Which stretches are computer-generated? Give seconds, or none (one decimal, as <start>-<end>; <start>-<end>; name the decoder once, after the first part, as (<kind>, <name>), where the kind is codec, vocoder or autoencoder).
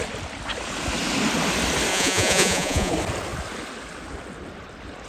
1.9-2.9 (vocoder, Vocos)